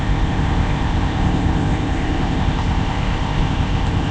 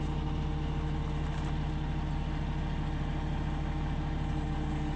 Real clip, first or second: second